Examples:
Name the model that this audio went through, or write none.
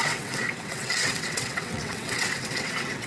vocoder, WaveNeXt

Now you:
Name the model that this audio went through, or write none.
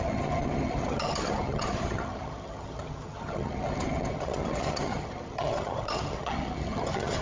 vocoder, HiFi-GAN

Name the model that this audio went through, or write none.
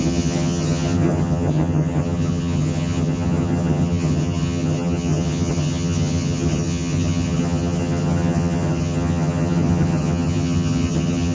vocoder, HiFi-GAN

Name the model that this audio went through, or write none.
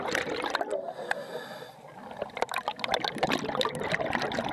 none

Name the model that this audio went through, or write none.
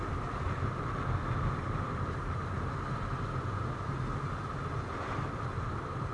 none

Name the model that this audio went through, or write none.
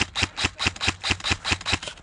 none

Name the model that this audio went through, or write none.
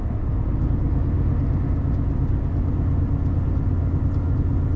none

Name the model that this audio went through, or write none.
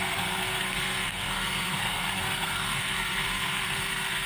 codec, SNAC